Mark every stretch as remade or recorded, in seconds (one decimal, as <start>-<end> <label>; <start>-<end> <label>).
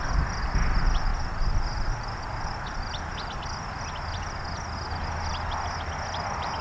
0.0-6.6 recorded